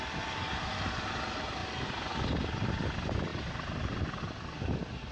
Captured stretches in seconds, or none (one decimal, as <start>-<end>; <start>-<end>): 0.0-5.1